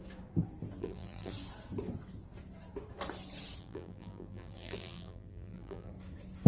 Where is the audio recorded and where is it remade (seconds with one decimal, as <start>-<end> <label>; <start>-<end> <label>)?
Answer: 0.0-0.8 recorded; 0.8-1.3 remade; 1.3-3.6 recorded; 3.6-5.9 remade; 5.9-6.5 recorded